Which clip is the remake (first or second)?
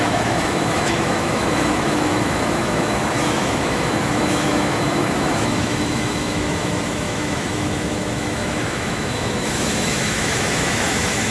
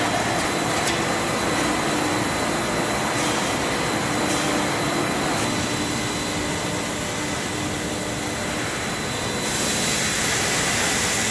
first